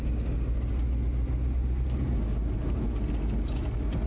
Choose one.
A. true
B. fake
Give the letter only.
A